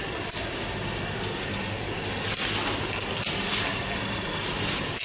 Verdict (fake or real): real